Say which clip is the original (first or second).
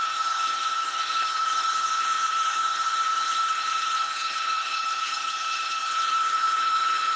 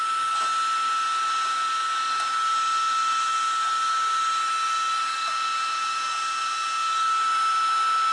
second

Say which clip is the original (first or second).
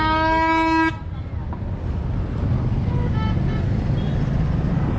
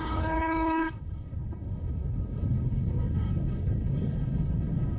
first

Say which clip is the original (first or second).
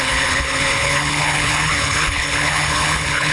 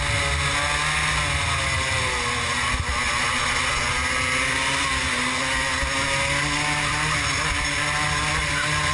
second